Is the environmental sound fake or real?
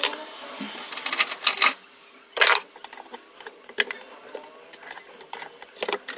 real